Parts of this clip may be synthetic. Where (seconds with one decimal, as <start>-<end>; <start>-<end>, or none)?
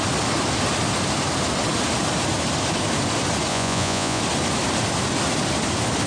3.5-4.2